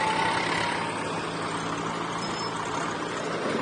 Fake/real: real